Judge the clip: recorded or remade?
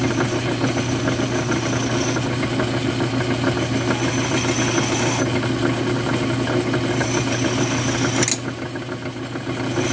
recorded